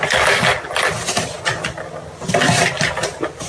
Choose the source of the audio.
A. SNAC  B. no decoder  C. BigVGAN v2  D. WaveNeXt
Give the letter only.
B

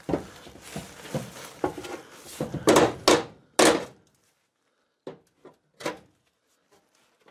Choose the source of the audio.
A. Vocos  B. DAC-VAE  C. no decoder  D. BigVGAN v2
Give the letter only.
C